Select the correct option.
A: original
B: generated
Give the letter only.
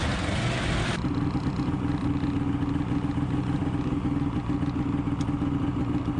A